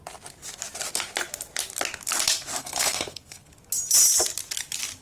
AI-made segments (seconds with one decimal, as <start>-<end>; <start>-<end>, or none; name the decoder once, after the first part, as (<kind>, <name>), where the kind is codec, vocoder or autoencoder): 2.6-3.5 (codec, SNAC)